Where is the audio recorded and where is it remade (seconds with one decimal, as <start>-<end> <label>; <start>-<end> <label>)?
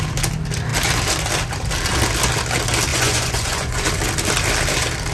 0.0-2.9 recorded; 2.9-3.9 remade; 3.9-5.1 recorded